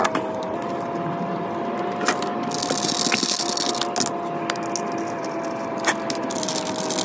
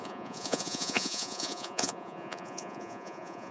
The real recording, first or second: first